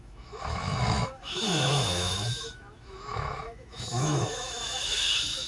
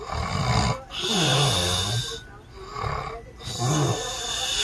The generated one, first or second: first